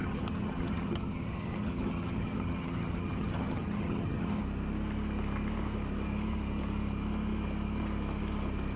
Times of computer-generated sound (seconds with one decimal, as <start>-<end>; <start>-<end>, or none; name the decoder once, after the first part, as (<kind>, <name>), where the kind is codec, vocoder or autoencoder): 0.0-4.4 (vocoder, HiFi-GAN)